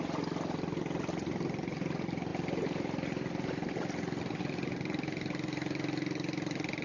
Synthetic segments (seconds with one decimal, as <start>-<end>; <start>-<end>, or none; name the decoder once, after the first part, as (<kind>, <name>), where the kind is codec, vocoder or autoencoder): none